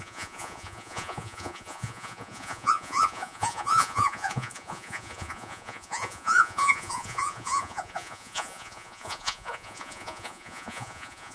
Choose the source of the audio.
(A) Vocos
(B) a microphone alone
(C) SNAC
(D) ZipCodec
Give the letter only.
A